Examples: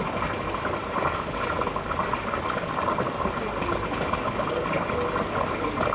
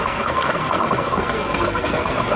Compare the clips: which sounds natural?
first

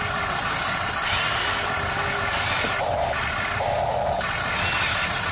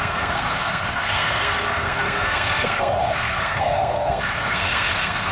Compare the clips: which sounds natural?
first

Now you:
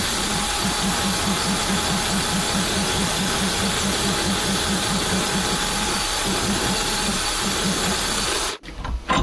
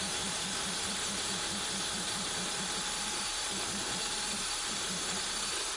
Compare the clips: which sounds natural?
first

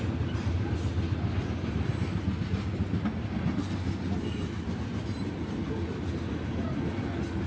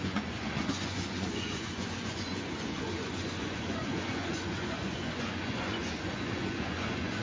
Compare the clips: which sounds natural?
first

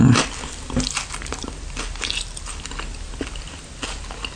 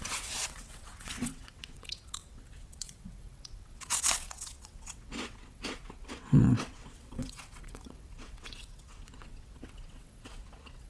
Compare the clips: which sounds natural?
first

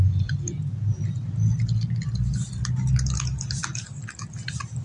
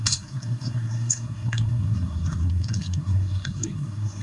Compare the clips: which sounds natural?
first